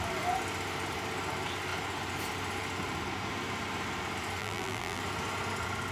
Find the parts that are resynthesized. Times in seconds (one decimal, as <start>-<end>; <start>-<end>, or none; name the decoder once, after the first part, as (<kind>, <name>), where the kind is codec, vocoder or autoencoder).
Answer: 4.4-5.0 (vocoder, BigVGAN v2)